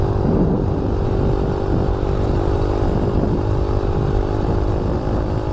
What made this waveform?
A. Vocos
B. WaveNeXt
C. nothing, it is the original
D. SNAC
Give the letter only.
C